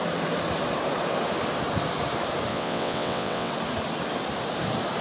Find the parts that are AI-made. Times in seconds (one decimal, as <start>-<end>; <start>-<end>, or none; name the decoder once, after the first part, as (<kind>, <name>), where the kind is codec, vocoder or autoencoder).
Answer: 2.5-3.5 (vocoder, WaveNeXt)